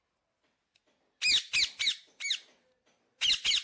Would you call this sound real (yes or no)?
yes